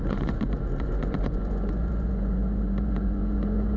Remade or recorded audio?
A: remade